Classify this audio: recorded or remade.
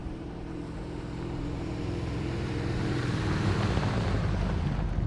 remade